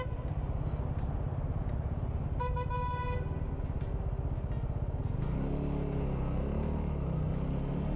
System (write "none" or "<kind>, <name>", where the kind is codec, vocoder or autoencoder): none